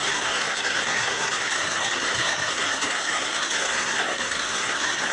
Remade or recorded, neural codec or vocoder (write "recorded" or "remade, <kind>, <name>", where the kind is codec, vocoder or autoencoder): remade, codec, SNAC